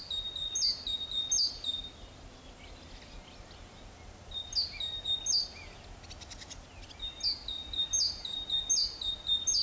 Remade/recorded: recorded